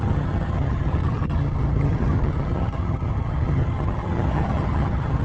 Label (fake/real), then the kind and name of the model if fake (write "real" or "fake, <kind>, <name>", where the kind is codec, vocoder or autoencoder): fake, vocoder, HiFi-GAN